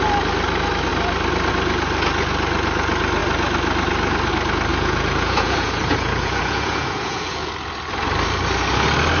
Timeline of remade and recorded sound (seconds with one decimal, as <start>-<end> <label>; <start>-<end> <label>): 0.0-4.7 recorded; 4.7-7.5 remade; 7.5-9.2 recorded

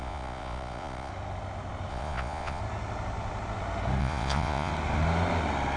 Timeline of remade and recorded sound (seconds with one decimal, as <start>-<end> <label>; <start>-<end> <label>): 0.0-1.1 remade; 1.1-1.9 recorded; 1.9-2.6 remade; 2.6-4.0 recorded; 4.0-4.7 remade; 4.7-5.8 recorded

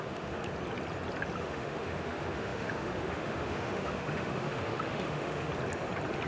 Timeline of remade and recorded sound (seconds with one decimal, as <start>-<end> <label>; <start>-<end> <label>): 0.0-0.4 remade; 0.4-1.4 recorded; 1.4-5.5 remade; 5.5-6.3 recorded

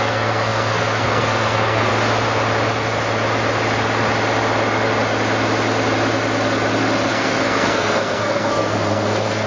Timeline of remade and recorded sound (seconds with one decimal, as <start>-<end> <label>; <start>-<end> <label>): 0.0-1.9 remade; 1.9-7.1 recorded; 7.1-9.5 remade

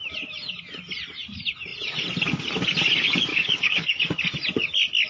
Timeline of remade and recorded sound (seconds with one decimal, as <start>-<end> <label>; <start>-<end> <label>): 0.0-3.3 recorded; 3.3-4.0 remade; 4.0-5.1 recorded

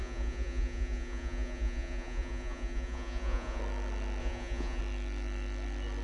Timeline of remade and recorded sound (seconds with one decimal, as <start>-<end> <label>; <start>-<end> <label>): 0.0-3.6 remade; 3.6-4.2 recorded; 4.2-4.8 remade; 4.8-6.0 recorded

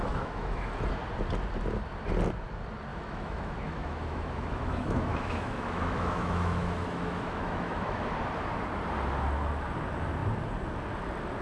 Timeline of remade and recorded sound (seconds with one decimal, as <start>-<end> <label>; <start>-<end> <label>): 0.0-0.7 remade; 0.7-2.9 recorded; 2.9-8.1 remade; 8.1-11.4 recorded